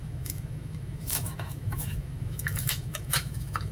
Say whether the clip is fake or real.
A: fake